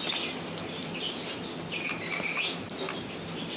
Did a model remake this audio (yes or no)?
yes